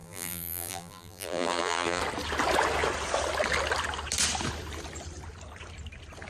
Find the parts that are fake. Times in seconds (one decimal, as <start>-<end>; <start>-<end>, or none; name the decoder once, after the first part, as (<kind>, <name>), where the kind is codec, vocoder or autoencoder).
0.0-2.0 (vocoder, BigVGAN v2)